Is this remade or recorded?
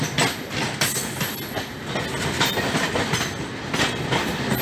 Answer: recorded